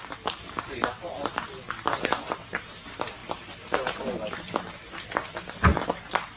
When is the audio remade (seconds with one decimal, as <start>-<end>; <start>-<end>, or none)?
0.0-5.7